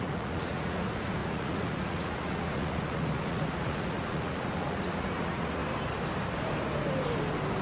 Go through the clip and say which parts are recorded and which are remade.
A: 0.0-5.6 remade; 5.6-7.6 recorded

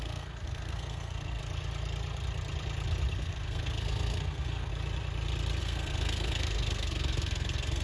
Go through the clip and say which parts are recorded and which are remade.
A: 0.0-1.4 remade; 1.4-3.1 recorded; 3.1-4.7 remade; 4.7-5.6 recorded; 5.6-7.8 remade